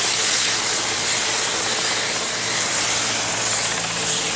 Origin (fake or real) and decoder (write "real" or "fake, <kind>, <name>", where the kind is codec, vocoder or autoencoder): real